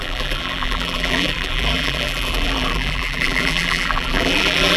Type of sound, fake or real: fake